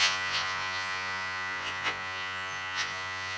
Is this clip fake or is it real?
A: fake